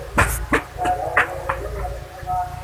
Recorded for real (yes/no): yes